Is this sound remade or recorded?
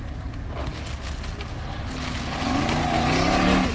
recorded